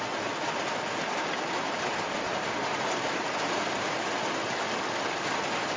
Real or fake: real